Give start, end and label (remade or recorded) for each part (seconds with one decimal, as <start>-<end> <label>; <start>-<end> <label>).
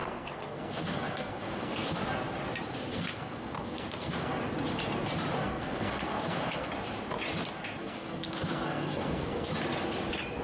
0.0-2.0 remade; 2.0-2.9 recorded; 2.9-4.3 remade; 4.3-5.4 recorded; 5.4-6.7 remade; 6.7-7.8 recorded; 7.8-9.5 remade; 9.5-10.4 recorded